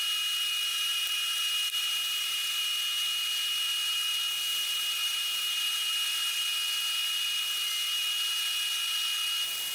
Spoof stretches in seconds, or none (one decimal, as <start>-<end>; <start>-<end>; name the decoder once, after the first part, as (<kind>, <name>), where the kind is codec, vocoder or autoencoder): 0.7-2.6 (vocoder, BigVGAN v2); 4.5-6.4